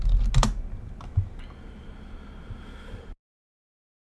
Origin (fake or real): real